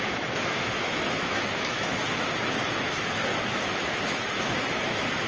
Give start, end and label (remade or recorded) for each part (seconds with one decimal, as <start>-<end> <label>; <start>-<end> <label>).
0.0-5.3 remade